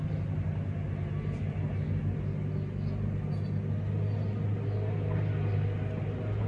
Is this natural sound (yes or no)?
yes